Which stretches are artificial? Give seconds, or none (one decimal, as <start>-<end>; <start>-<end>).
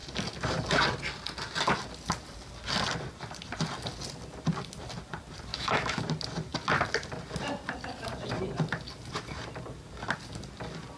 5.5-6.0